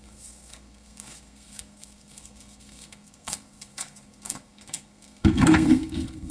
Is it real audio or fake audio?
fake